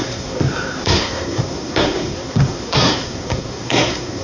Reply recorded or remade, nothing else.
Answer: remade